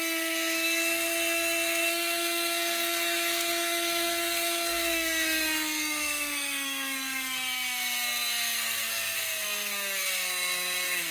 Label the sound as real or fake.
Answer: fake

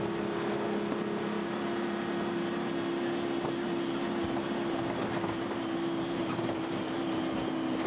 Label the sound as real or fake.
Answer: real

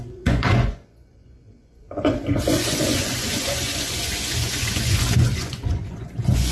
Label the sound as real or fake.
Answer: fake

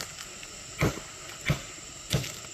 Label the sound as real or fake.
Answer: real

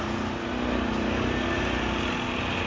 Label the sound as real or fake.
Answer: real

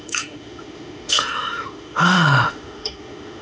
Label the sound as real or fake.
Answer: fake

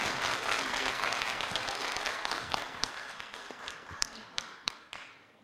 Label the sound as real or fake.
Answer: fake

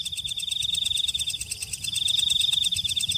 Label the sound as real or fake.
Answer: real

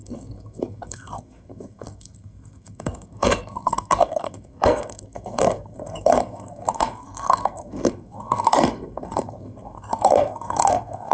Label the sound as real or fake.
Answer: fake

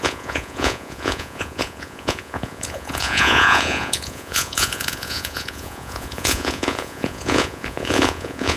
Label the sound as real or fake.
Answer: fake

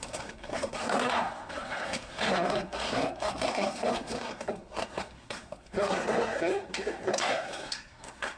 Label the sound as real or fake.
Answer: fake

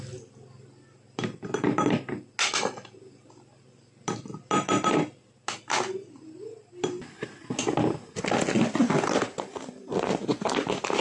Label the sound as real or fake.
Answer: real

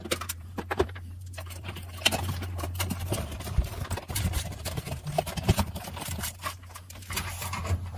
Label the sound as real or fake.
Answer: fake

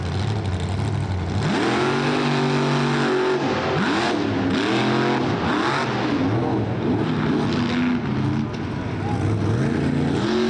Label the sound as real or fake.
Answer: real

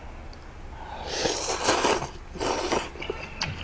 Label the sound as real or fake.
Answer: real